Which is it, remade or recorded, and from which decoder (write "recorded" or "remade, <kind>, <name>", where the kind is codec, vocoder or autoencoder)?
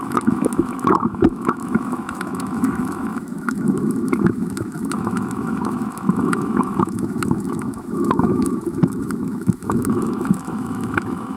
remade, autoencoder, DAC-VAE